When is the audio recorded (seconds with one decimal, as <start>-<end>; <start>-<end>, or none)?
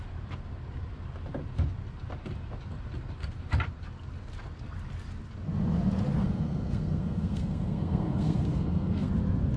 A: 0.0-6.2; 9.1-9.6